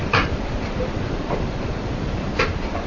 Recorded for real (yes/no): no